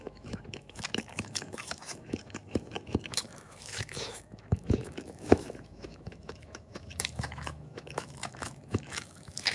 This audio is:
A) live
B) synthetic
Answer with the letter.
B